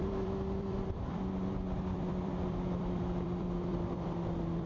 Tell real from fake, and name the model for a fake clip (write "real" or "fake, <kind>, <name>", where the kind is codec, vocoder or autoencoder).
fake, vocoder, BigVGAN v2